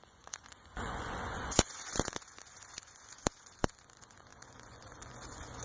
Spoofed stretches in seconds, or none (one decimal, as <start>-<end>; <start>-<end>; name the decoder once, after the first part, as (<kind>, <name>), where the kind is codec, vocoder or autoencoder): 0.0-5.6 (vocoder, Vocos)